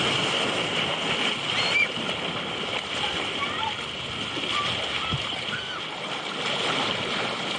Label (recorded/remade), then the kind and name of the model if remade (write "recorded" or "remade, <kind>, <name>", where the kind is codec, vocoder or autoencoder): recorded